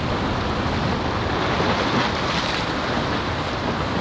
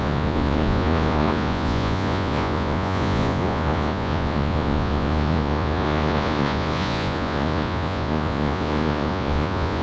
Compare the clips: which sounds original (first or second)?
first